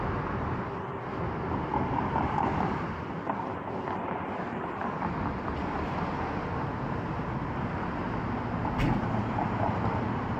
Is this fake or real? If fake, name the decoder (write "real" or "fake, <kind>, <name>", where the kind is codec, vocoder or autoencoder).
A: real